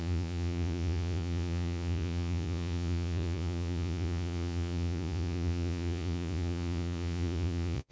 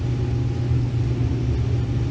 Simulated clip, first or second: first